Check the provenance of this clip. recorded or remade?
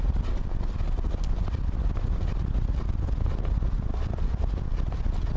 recorded